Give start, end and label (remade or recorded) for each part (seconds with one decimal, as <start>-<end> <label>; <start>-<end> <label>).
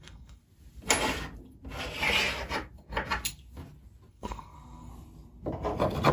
0.0-0.4 remade; 0.4-4.1 recorded; 4.1-4.9 remade; 4.9-6.1 recorded